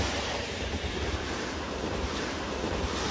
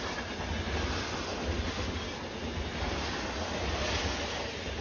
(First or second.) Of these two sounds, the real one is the second